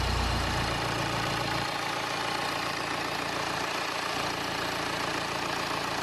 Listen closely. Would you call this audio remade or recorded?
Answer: remade